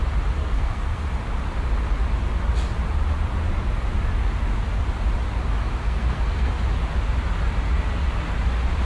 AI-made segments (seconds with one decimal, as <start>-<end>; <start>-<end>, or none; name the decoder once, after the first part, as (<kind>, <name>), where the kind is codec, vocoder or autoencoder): 0.4-1.0 (codec, SNAC); 5.8-6.5